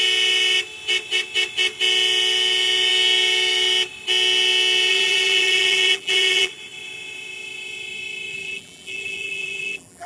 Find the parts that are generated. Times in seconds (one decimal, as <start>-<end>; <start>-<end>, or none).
4.9-6.5; 8.3-10.1